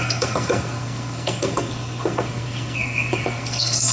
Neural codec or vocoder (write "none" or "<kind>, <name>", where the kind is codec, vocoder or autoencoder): codec, SNAC